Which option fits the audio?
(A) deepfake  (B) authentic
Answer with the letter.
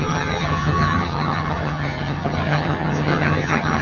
A